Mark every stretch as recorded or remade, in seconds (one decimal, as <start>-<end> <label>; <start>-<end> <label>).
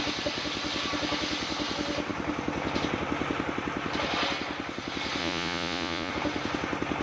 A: 0.0-5.2 recorded; 5.2-6.1 remade; 6.1-7.0 recorded